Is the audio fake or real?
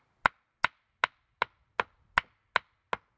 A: real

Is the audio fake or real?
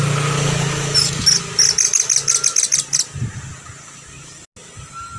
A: real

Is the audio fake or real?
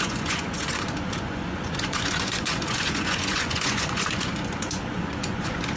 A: fake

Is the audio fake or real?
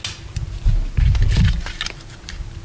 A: real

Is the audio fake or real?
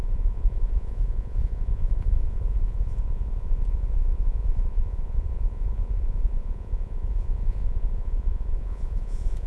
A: fake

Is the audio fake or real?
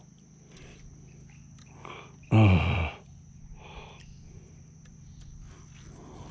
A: real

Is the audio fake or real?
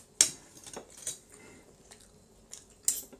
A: real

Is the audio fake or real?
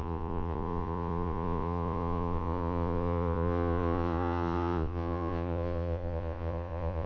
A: fake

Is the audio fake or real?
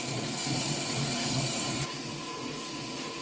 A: fake